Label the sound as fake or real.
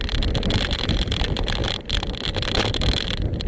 real